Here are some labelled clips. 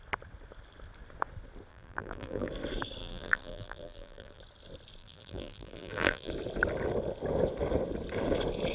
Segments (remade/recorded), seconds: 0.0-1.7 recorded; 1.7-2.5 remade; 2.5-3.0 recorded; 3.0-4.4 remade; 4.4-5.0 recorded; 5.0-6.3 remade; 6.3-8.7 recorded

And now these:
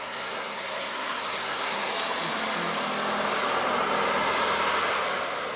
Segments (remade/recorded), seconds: 0.0-1.9 remade; 1.9-5.6 recorded